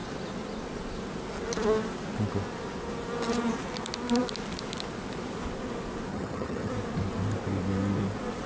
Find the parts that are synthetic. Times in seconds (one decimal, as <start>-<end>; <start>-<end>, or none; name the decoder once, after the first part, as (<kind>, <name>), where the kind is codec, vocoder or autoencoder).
6.1-6.7 (vocoder, HiFi-GAN)